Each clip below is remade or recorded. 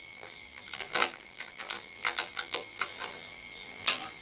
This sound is remade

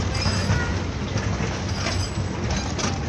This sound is recorded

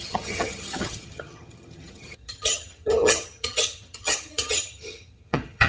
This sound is remade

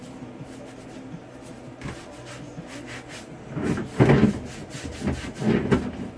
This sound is recorded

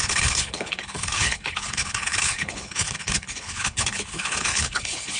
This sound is remade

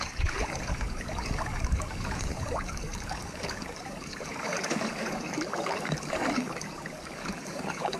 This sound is remade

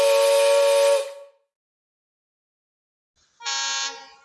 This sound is recorded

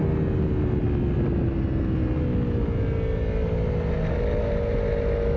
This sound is recorded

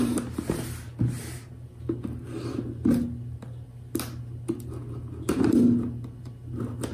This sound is recorded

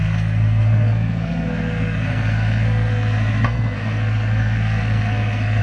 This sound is remade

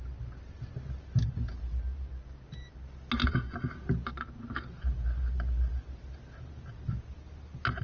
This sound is recorded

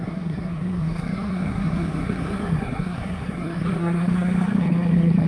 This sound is remade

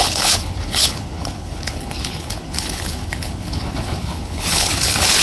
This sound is remade